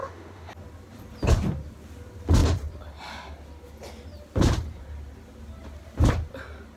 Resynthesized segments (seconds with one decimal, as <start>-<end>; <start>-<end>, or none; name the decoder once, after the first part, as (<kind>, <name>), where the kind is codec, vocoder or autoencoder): 0.0-0.5 (autoencoder, DAC-VAE)